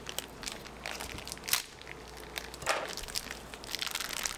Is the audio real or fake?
real